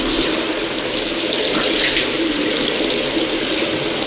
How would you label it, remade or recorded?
recorded